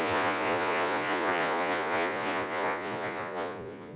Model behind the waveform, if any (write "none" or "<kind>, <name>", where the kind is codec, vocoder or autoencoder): vocoder, Vocos